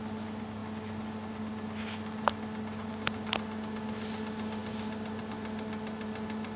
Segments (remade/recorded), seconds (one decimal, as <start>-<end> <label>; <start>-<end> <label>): 0.0-6.6 recorded